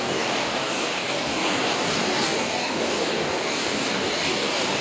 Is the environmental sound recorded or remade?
remade